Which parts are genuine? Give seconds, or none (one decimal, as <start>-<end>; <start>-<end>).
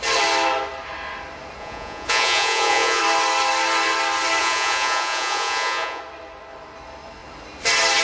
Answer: 0.0-1.6; 3.0-4.4; 6.0-8.0